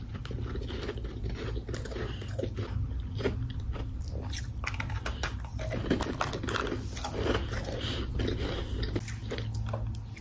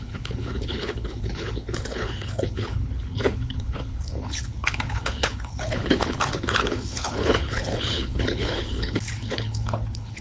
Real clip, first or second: first